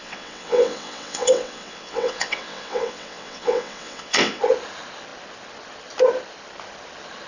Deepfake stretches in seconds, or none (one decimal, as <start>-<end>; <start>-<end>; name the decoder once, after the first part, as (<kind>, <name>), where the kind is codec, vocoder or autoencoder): 0.0-4.4 (vocoder, WaveNeXt)